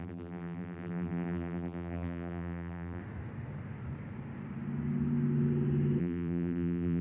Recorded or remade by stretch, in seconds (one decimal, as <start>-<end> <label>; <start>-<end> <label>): 0.0-3.0 remade; 3.0-6.0 recorded; 6.0-7.0 remade